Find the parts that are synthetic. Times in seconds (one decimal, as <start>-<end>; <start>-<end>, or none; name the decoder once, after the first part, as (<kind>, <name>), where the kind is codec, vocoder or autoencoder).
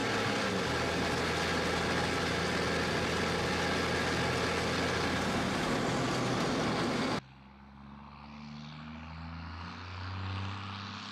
none